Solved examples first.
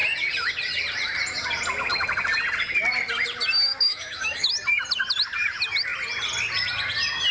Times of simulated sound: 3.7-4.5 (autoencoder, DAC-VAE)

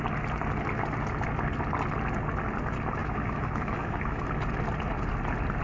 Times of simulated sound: 3.0-4.3 (autoencoder, DAC-VAE)